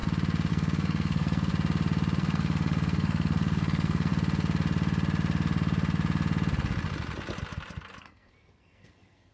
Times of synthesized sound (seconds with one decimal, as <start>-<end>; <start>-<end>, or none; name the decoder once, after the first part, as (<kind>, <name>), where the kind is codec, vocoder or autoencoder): 0.5-1.5 (codec, SNAC); 2.2-4.1; 8.0-9.3